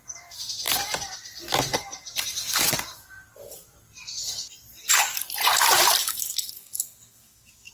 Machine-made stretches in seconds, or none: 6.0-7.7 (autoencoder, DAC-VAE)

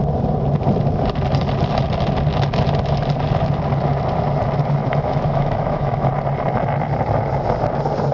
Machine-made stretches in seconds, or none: 4.8-6.1 (autoencoder, DAC-VAE)

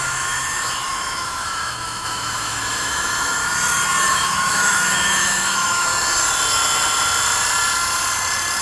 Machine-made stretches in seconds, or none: 0.0-3.4 (autoencoder, DAC-VAE); 4.0-5.9

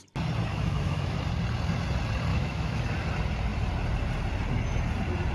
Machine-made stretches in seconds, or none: 0.5-1.2 (autoencoder, DAC-VAE); 2.3-2.8

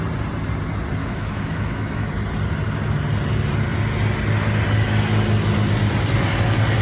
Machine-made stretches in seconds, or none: 1.0-2.1 (autoencoder, DAC-VAE)